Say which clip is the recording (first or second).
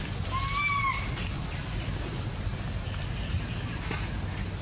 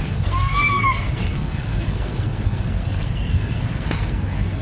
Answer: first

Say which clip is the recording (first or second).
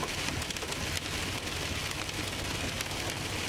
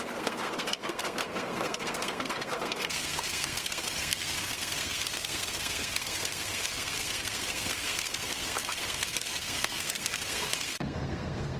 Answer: first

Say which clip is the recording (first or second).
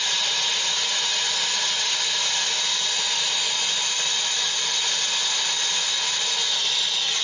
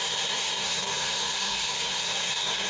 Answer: first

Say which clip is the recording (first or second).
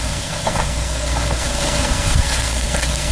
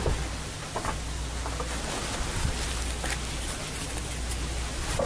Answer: second